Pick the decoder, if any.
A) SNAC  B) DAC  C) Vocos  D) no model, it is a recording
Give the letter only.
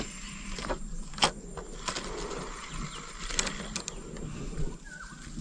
D